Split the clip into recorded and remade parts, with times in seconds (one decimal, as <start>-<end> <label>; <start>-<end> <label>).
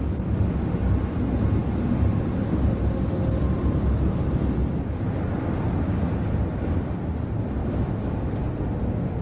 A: 0.0-7.6 recorded; 7.6-8.3 remade; 8.3-9.2 recorded